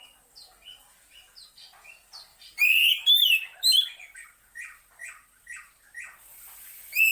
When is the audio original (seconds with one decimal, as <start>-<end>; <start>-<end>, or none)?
0.0-2.3; 4.9-6.3